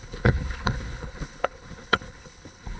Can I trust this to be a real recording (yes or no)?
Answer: no